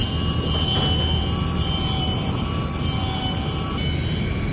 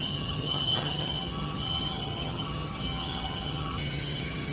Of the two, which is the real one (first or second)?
first